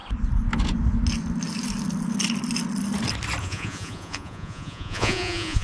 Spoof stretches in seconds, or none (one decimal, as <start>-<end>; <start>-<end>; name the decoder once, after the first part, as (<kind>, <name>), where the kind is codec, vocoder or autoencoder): 3.4-5.6 (vocoder, Vocos)